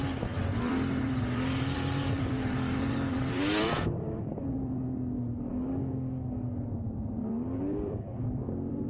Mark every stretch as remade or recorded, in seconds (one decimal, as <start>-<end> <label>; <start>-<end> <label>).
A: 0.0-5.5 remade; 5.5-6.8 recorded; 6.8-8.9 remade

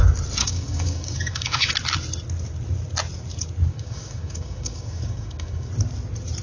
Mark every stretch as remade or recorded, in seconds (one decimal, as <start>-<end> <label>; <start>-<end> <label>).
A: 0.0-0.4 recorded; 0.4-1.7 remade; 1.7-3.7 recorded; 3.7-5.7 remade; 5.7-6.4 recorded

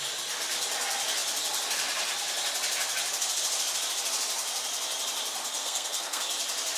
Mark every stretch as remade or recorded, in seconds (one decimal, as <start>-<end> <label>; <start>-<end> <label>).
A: 0.0-5.6 recorded; 5.6-6.2 remade; 6.2-6.8 recorded